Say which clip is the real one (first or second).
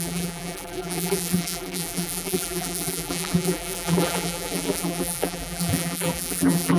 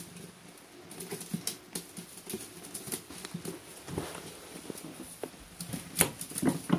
second